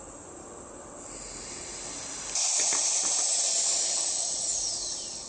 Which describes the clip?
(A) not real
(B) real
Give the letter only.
B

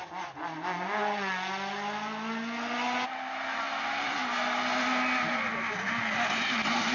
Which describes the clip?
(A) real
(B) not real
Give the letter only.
A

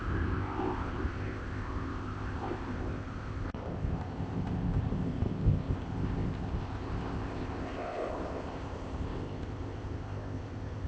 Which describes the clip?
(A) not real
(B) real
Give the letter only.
A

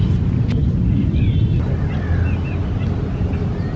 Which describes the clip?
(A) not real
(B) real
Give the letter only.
B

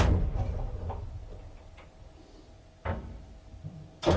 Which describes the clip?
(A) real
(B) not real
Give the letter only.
A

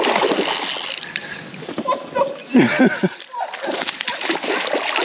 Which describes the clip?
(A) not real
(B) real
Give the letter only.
B